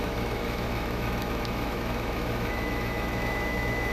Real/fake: fake